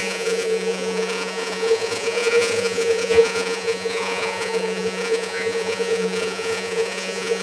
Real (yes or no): no